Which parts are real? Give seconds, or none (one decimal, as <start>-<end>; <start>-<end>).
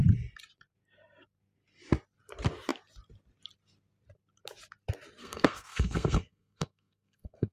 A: 0.0-5.2